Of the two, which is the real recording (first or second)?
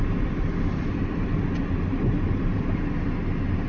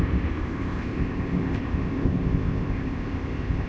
first